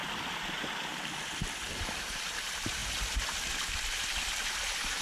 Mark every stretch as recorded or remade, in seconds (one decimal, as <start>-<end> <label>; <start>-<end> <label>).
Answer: 0.0-0.5 recorded; 0.5-0.9 remade; 0.9-1.7 recorded; 1.7-2.8 remade; 2.8-4.2 recorded; 4.2-5.0 remade